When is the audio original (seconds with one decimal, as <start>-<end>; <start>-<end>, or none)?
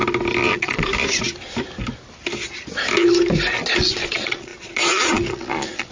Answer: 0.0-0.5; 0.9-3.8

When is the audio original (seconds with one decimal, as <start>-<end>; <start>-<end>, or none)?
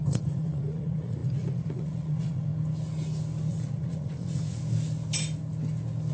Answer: 2.5-3.5; 4.6-6.1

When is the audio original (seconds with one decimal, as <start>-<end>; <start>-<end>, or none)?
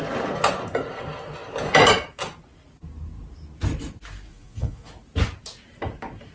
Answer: 0.0-4.3; 4.9-6.3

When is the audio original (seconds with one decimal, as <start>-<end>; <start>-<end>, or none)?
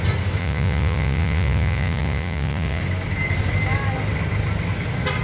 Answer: 0.0-0.4; 2.8-5.2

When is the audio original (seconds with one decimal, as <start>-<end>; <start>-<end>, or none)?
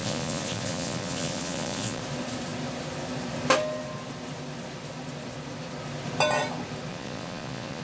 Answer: 2.0-6.9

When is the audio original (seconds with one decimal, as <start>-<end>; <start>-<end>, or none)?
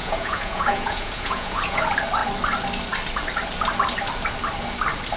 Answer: 1.8-5.2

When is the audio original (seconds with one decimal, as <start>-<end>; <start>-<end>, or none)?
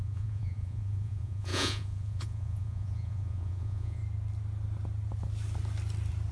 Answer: 4.0-6.3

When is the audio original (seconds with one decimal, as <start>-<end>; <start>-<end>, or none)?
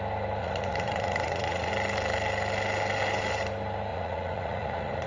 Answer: 0.0-0.4; 1.7-3.9